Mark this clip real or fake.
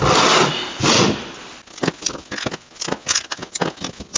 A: real